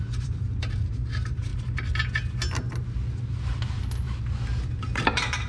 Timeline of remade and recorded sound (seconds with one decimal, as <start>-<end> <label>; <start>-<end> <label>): 0.0-1.5 remade; 1.5-4.8 recorded; 4.8-5.5 remade